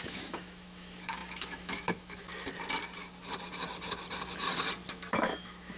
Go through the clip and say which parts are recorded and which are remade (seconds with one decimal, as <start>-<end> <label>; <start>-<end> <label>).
0.0-2.3 remade; 2.3-4.9 recorded; 4.9-5.8 remade